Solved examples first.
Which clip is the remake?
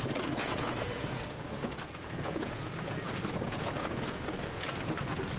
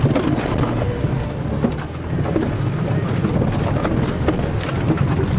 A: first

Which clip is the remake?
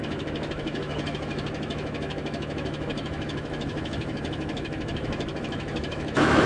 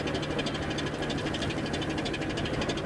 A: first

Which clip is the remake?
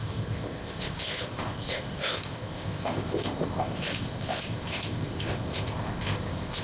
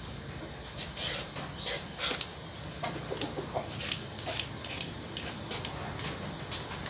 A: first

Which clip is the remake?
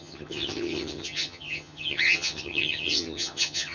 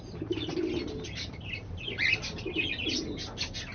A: first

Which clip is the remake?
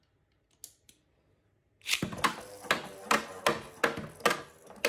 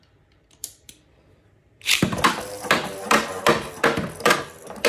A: second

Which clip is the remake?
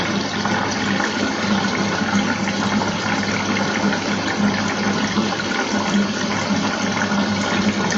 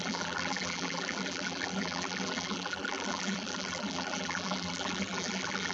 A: second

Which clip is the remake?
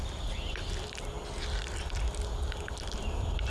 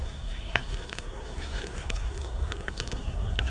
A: second